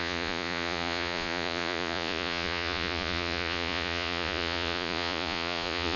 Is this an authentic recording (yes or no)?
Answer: no